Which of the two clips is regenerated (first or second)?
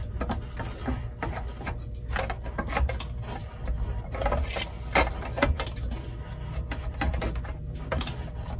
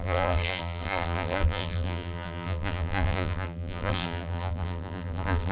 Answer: second